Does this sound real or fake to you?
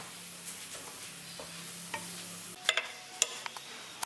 real